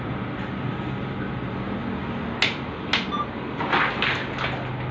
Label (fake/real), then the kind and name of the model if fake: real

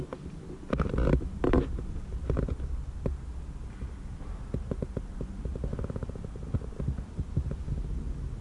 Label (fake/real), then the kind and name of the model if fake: real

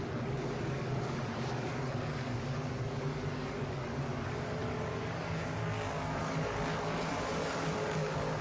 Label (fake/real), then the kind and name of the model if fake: fake, codec, DAC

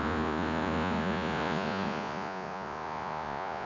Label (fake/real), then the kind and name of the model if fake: fake, vocoder, Vocos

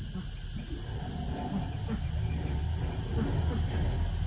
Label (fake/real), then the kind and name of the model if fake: real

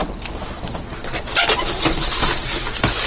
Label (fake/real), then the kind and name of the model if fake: real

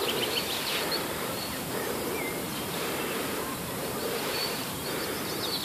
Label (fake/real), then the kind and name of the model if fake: fake, vocoder, BigVGAN v2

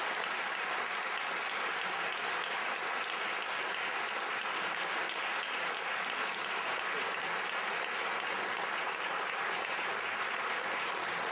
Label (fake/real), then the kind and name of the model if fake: real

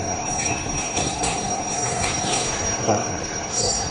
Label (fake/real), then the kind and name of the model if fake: fake, codec, SNAC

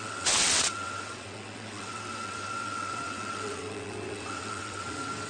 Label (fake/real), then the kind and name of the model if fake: fake, vocoder, WaveNeXt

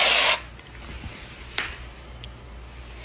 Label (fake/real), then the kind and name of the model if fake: real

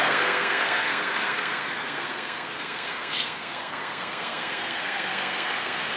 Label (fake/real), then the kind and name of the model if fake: fake, codec, SNAC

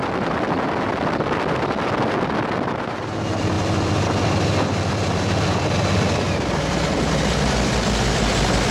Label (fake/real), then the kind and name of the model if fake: real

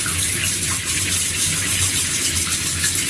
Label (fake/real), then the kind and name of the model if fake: fake, vocoder, BigVGAN v2